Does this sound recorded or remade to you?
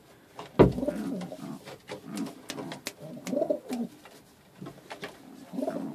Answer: recorded